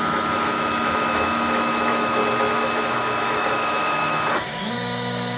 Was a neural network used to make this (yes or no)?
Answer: yes